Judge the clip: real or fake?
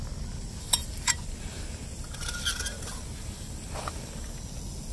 real